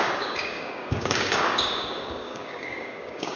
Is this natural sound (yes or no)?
no